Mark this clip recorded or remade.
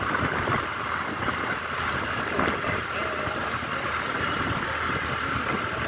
recorded